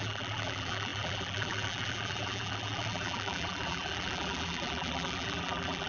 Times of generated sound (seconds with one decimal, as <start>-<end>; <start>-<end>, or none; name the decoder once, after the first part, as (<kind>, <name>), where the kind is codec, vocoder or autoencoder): 0.0-5.9 (vocoder, BigVGAN v2)